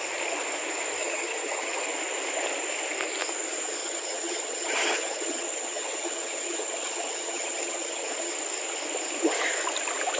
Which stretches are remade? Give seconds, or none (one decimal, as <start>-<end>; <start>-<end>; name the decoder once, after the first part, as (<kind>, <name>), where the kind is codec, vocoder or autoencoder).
1.0-1.7 (vocoder, HiFi-GAN); 3.8-8.3